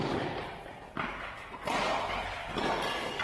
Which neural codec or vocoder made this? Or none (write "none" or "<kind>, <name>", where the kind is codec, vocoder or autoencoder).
none